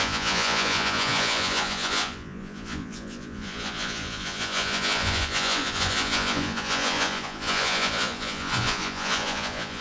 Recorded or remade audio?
remade